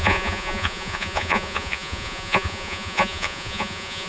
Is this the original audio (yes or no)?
no